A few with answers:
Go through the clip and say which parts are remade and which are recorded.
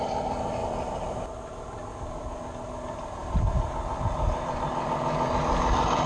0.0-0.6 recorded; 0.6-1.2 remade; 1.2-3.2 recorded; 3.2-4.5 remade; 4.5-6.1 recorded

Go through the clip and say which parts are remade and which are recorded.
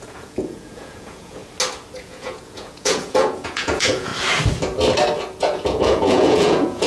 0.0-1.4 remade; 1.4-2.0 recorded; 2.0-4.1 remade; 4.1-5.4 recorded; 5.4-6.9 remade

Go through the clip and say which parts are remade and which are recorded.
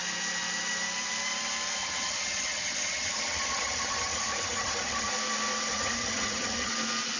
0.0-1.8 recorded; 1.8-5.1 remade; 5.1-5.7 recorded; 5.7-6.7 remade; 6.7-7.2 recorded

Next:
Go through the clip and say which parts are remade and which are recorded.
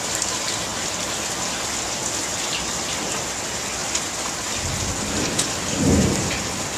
0.0-6.8 recorded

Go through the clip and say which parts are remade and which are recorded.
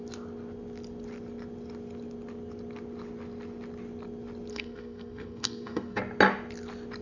0.0-4.5 recorded; 4.5-6.0 remade; 6.0-7.0 recorded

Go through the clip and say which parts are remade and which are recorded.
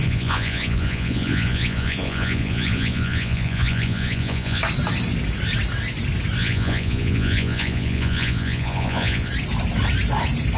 0.0-4.6 remade; 4.6-6.4 recorded; 6.4-9.3 remade; 9.3-10.6 recorded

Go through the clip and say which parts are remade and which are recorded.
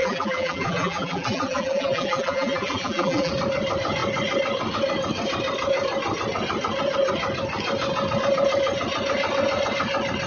0.0-3.3 remade; 3.3-10.3 recorded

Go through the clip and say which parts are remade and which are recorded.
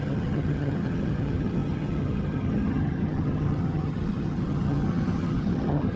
0.0-6.0 remade